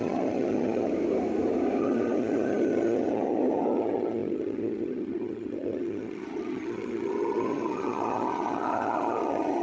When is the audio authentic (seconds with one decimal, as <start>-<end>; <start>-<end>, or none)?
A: 0.9-1.8